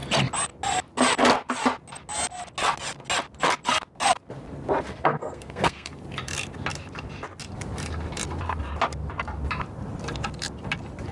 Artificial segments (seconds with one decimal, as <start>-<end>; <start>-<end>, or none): 4.9-5.9